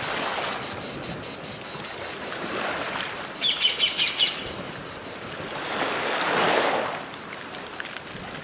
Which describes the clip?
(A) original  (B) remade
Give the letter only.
A